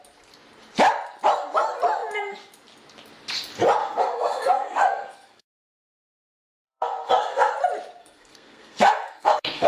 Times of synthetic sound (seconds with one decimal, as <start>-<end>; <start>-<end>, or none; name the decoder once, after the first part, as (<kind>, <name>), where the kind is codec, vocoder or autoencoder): 3.8-7.5 (codec, SNAC); 8.0-9.7